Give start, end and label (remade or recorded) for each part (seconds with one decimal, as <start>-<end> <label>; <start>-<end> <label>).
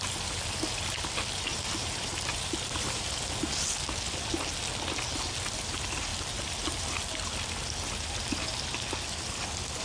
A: 0.0-1.5 recorded; 1.5-3.1 remade; 3.1-6.1 recorded; 6.1-7.0 remade; 7.0-9.8 recorded